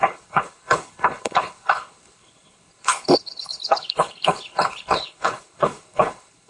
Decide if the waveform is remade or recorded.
remade